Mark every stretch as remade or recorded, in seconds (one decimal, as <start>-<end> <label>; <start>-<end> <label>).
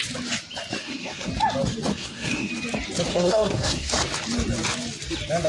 0.0-0.8 recorded; 0.8-1.3 remade; 1.3-1.9 recorded; 1.9-2.5 remade; 2.5-3.1 recorded; 3.1-3.9 remade; 3.9-5.5 recorded